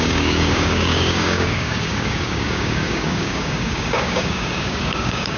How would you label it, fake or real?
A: fake